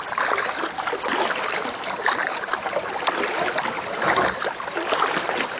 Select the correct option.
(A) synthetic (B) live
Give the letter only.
B